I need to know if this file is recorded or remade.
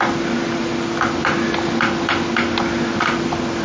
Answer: recorded